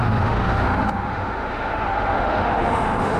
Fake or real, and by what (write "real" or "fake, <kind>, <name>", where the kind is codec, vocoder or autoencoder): fake, autoencoder, DAC-VAE